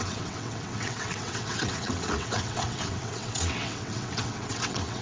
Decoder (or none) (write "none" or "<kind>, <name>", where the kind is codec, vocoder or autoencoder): vocoder, WaveNeXt